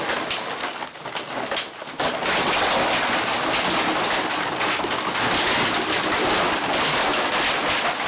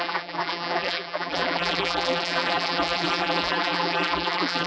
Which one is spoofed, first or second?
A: second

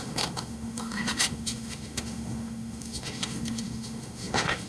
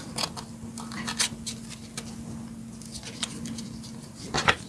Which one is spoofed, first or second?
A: first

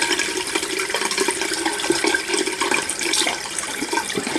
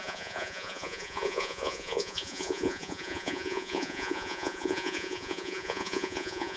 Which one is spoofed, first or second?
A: second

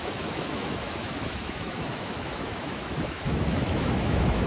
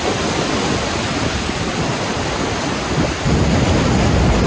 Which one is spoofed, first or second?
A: first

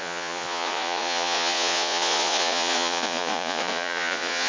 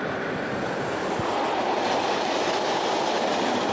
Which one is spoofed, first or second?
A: first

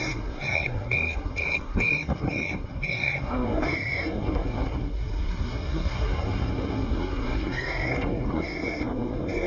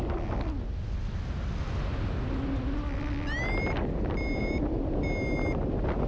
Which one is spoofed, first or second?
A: first